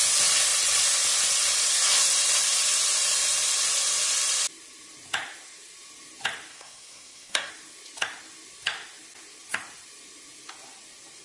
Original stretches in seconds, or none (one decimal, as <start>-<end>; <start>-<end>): 0.0-6.5; 7.5-11.2

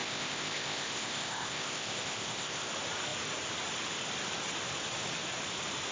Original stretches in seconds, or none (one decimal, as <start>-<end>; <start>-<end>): 2.7-5.9

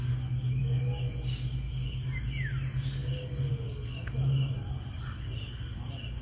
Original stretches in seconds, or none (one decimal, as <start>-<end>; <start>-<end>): 0.0-6.2

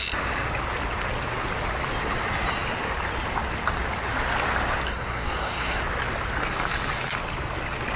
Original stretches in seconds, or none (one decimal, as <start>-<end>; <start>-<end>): 0.0-4.9; 5.8-8.0

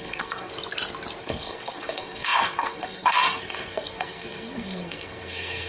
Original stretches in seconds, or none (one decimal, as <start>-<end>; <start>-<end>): 0.5-1.2